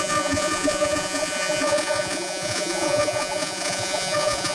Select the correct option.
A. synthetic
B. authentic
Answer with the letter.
A